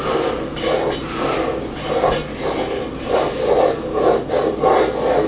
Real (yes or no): yes